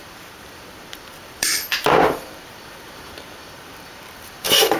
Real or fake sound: fake